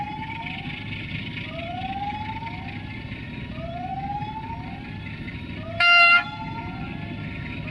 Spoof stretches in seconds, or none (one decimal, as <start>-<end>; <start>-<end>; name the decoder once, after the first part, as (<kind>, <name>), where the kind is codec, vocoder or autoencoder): none